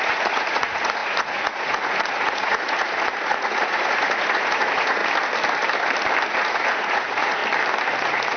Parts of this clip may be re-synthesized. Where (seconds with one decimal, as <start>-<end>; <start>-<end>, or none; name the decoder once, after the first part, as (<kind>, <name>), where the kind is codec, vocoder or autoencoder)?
0.0-5.0 (vocoder, Vocos); 6.3-7.4; 8.0-8.4